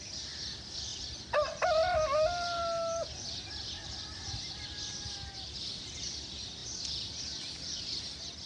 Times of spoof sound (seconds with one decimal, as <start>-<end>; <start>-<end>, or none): none